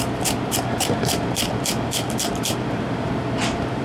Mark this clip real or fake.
fake